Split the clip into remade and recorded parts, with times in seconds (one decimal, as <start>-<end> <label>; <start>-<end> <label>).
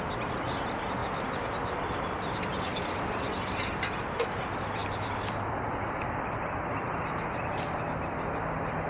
0.0-1.0 recorded; 1.0-3.3 remade; 3.3-4.8 recorded; 4.8-6.4 remade; 6.4-8.9 recorded